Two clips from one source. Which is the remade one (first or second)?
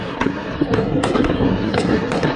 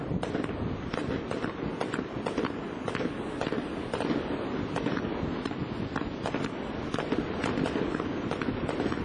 first